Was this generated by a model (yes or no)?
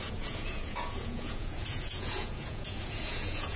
yes